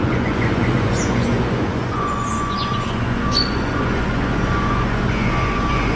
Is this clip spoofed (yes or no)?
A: yes